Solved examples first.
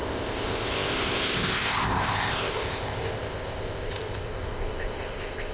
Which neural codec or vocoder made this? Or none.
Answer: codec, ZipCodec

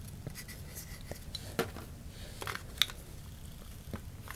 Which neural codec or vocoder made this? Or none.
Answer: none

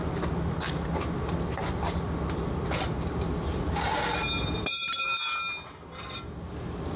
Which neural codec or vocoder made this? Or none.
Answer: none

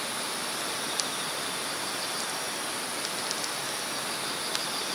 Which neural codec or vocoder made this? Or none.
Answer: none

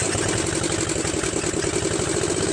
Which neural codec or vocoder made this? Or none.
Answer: none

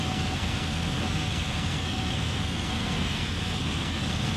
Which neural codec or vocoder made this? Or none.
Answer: codec, SNAC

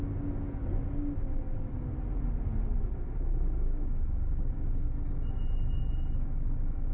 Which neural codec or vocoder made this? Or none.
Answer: none